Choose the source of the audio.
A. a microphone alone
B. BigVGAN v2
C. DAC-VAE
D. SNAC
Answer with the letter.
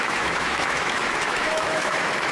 C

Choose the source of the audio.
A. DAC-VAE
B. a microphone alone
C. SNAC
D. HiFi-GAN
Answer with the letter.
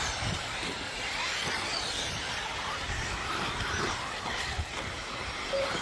B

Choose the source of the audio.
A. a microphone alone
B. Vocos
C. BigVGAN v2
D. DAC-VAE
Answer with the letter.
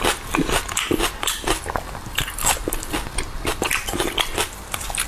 A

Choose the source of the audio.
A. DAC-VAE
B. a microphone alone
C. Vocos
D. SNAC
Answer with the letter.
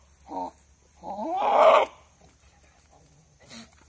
B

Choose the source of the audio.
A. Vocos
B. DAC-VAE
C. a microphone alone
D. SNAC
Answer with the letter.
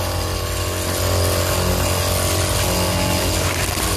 C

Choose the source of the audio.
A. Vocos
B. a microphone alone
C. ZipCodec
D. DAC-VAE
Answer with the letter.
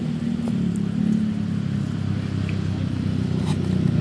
B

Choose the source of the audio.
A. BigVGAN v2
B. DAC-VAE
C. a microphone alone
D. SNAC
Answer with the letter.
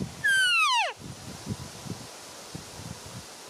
C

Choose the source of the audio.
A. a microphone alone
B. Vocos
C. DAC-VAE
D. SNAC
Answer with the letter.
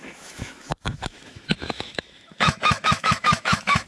C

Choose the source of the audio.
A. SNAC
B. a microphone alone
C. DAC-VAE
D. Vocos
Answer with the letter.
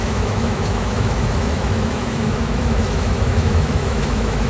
C